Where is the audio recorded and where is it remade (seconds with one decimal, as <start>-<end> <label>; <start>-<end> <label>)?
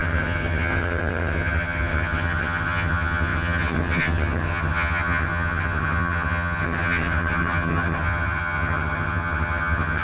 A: 0.0-10.0 remade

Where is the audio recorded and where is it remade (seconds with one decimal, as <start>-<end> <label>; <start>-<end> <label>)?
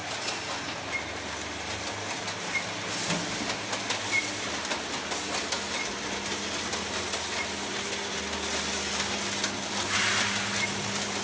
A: 0.0-11.2 recorded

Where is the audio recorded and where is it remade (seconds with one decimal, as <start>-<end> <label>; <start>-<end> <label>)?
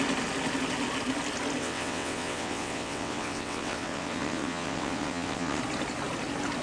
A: 0.0-1.6 recorded; 1.6-5.6 remade; 5.6-6.6 recorded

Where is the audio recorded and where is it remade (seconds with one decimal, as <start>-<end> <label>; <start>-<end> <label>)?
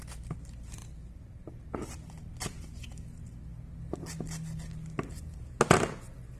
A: 0.0-6.4 recorded